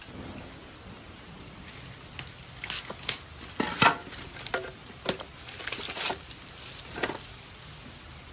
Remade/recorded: recorded